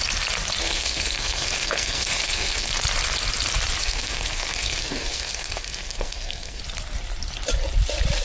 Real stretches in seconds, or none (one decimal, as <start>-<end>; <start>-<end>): 0.0-0.6; 2.7-3.8; 6.6-8.2